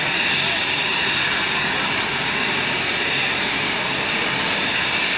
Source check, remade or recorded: recorded